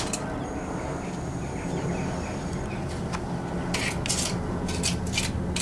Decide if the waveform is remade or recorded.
recorded